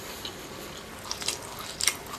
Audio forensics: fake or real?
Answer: real